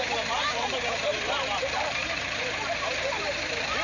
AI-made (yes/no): yes